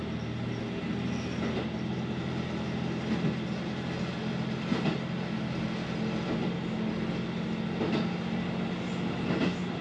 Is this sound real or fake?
real